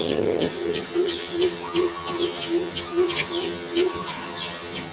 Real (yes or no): no